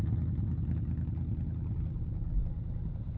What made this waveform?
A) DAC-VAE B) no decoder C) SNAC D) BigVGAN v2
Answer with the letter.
B